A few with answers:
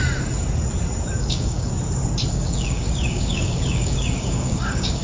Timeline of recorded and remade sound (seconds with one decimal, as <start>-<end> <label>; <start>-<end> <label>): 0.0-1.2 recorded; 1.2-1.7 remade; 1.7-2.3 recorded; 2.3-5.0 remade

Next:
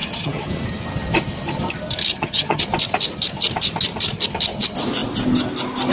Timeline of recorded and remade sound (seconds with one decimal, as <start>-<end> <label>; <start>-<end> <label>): 0.0-0.5 remade; 0.5-2.1 recorded; 2.1-2.6 remade; 2.6-5.9 recorded

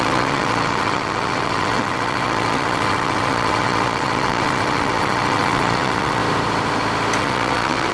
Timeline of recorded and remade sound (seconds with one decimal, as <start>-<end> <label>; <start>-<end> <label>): 0.0-6.2 remade; 6.2-7.2 recorded; 7.2-7.9 remade

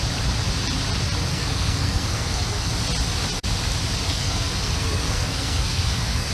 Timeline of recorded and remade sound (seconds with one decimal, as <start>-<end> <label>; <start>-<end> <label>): 0.0-1.3 recorded; 1.3-2.7 remade; 2.7-4.1 recorded; 4.1-6.3 remade

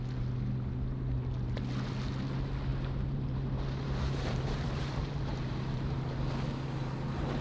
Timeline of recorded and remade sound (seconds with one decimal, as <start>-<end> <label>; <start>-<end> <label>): 0.0-2.7 recorded; 2.7-6.0 remade; 6.0-7.4 recorded

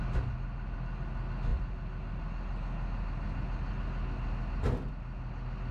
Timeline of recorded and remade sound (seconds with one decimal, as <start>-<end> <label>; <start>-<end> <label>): 0.0-5.7 recorded